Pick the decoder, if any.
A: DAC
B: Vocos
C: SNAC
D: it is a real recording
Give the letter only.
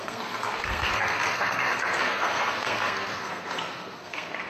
C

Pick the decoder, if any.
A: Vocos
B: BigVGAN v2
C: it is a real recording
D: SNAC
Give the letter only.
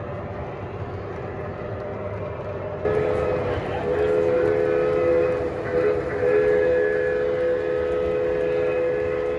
C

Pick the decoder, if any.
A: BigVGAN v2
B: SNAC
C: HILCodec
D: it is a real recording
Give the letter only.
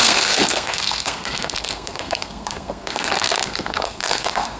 B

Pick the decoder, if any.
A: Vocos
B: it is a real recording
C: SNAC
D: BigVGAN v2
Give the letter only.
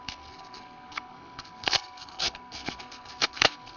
C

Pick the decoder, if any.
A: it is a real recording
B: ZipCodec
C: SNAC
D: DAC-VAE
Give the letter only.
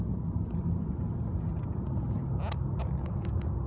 A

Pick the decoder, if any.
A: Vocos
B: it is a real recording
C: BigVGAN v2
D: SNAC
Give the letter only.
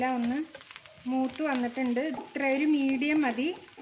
B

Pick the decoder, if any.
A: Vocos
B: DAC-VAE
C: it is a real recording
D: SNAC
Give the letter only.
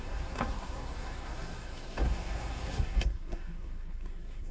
D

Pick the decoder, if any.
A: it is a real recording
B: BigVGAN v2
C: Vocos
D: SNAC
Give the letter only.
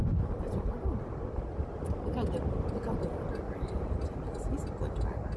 A